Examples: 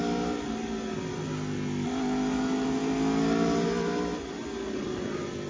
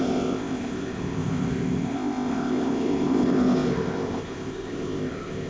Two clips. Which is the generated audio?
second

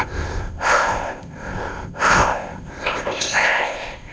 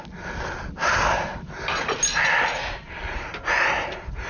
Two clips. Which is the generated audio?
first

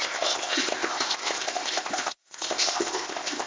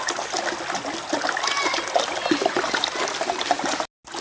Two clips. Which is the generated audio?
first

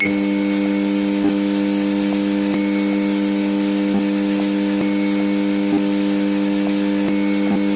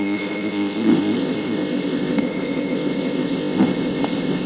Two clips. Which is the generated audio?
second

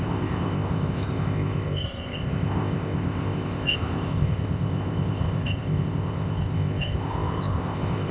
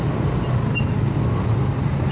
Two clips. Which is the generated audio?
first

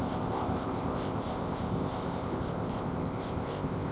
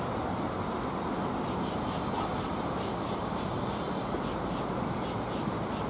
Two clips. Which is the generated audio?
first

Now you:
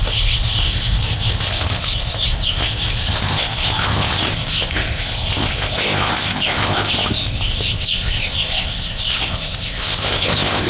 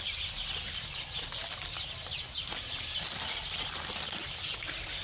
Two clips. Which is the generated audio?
first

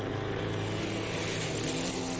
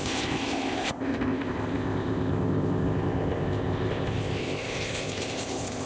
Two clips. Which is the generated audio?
second